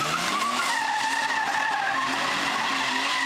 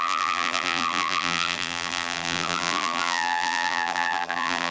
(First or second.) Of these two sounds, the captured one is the first